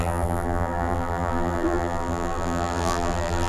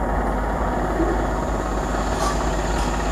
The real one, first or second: second